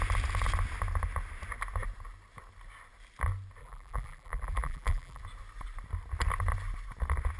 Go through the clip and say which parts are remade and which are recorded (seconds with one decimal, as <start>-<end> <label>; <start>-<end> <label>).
0.0-3.6 recorded; 3.6-5.2 remade; 5.2-7.4 recorded